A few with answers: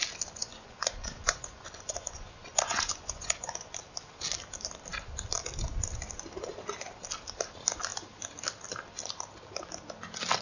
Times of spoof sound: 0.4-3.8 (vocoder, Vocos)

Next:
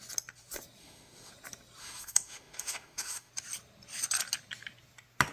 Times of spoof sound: 0.8-1.3 (autoencoder, DAC-VAE); 1.8-3.3

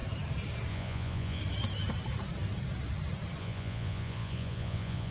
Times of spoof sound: 0.7-1.4 (vocoder, Vocos); 3.4-5.1

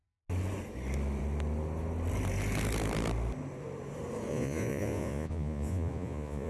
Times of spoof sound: 4.3-6.5 (vocoder, Vocos)